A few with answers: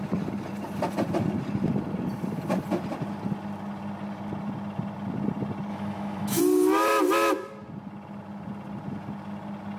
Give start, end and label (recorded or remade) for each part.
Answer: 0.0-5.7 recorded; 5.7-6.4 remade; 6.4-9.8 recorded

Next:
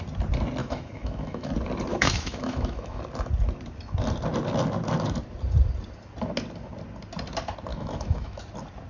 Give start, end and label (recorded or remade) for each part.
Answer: 0.0-0.6 recorded; 0.6-1.5 remade; 1.5-1.9 recorded; 1.9-3.0 remade; 3.0-7.7 recorded; 7.7-8.4 remade; 8.4-8.9 recorded

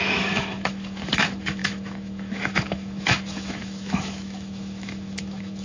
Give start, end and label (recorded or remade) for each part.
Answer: 0.0-5.6 remade

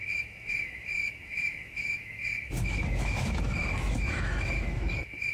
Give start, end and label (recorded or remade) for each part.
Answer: 0.0-5.3 remade